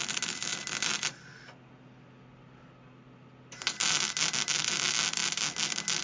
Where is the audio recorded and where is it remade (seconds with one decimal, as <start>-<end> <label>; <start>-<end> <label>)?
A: 0.0-6.0 recorded